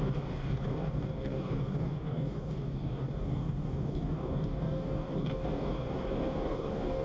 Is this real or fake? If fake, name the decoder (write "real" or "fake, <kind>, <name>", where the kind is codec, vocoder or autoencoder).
fake, codec, DAC